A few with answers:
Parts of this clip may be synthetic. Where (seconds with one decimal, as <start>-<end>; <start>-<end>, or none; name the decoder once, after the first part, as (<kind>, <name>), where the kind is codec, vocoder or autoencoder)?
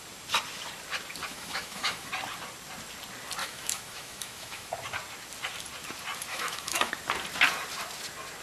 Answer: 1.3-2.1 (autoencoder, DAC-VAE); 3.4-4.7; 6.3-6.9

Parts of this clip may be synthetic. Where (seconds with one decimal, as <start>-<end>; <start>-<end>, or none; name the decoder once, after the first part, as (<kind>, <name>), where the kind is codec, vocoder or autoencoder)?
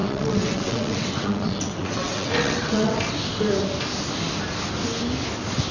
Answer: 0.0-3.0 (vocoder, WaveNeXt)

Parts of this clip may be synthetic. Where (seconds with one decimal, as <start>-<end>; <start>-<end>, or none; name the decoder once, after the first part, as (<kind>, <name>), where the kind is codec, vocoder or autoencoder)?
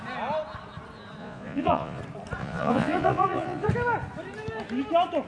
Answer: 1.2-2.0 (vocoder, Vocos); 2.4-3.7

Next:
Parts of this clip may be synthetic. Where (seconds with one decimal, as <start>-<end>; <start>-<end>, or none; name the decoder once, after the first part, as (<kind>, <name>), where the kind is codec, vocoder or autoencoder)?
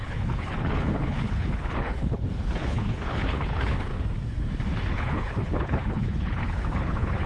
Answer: 0.0-3.9 (codec, HILCodec); 4.9-7.3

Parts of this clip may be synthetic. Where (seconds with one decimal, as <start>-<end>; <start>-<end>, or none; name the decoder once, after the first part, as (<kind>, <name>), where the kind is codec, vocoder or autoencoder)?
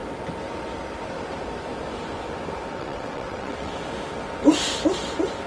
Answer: 2.7-3.7 (vocoder, WaveNeXt)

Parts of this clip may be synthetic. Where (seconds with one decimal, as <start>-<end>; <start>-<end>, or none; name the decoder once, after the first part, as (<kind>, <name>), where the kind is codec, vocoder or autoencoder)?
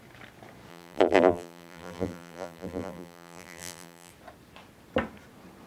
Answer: 0.7-4.1 (vocoder, BigVGAN v2)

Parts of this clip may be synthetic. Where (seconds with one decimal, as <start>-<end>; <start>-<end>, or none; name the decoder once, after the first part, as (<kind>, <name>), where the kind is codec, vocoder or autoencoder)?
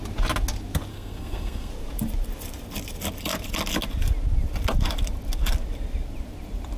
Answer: 0.9-1.7 (codec, SNAC)